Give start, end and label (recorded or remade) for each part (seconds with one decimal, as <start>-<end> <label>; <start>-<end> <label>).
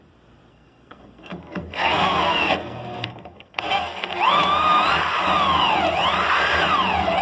0.0-0.5 recorded; 0.5-4.2 remade; 4.2-7.2 recorded